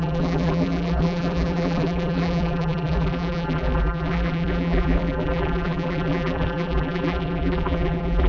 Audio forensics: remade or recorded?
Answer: remade